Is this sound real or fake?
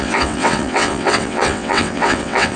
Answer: fake